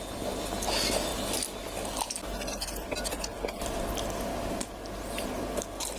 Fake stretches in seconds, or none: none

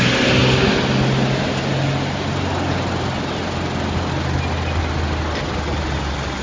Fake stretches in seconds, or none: none

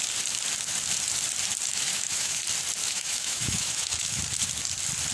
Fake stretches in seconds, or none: 1.7-2.4 (autoencoder, DAC-VAE); 2.8-4.2

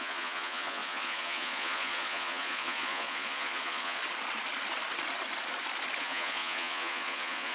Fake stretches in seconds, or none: 0.0-4.0 (vocoder, Vocos); 6.0-7.5

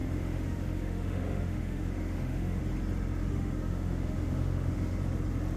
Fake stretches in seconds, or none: 0.0-2.6 (autoencoder, DAC-VAE); 3.2-5.0

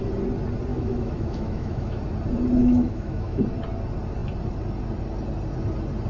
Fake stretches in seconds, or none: 0.7-2.0 (autoencoder, DAC-VAE); 2.6-3.4

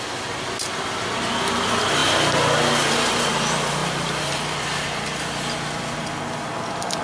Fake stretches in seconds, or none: 3.8-5.2 (vocoder, BigVGAN v2)